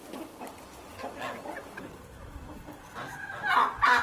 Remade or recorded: recorded